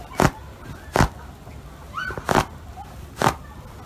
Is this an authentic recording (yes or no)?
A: yes